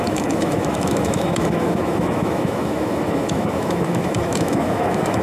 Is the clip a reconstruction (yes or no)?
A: yes